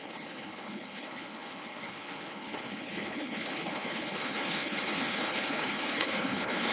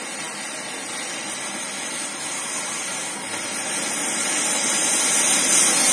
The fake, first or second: first